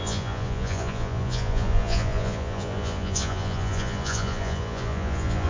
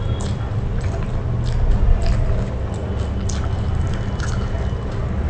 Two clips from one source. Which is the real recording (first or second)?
second